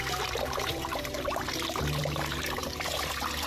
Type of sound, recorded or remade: remade